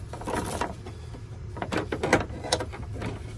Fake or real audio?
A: real